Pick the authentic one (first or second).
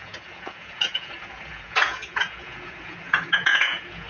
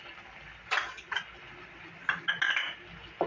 second